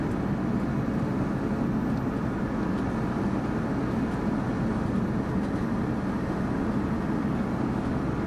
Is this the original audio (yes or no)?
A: yes